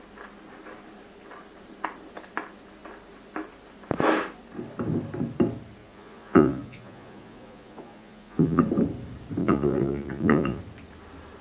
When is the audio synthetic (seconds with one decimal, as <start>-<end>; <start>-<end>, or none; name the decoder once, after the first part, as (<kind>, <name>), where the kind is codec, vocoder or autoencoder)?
5.8-8.6 (vocoder, Vocos); 9.4-10.6

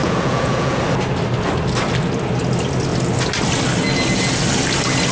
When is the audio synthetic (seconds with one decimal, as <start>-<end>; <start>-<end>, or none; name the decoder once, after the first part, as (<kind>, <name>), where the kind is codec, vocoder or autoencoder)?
0.0-0.8 (vocoder, Vocos)

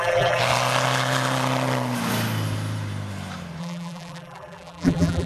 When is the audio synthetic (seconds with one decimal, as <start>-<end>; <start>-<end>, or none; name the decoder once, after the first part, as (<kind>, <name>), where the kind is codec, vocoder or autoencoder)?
0.0-0.4 (vocoder, BigVGAN v2); 3.6-5.3

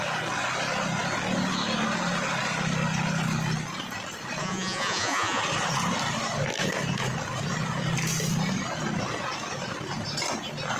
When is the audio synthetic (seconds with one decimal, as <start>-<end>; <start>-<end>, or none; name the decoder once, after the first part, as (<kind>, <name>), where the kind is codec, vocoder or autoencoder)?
4.4-5.4 (vocoder, Vocos)

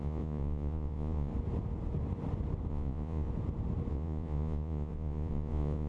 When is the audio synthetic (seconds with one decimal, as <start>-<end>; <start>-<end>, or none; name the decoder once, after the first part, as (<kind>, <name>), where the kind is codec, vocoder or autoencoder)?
0.0-1.3 (vocoder, Vocos); 2.7-3.3; 3.9-5.9